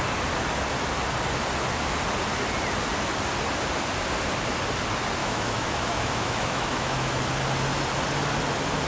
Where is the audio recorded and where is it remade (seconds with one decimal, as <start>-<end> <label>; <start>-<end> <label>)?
0.0-5.2 recorded; 5.2-7.2 remade; 7.2-8.9 recorded